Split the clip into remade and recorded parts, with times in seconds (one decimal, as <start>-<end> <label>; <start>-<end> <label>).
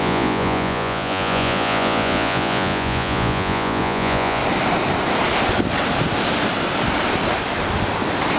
0.0-4.4 remade; 4.4-8.4 recorded